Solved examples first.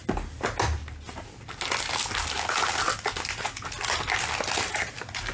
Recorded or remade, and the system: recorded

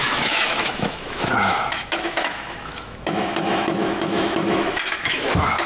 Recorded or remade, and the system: remade, autoencoder, DAC-VAE